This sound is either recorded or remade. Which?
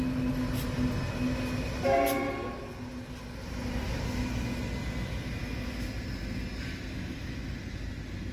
recorded